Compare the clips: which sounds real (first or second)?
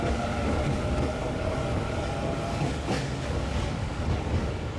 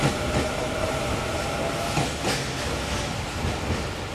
second